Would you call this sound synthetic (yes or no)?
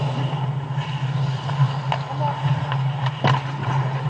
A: no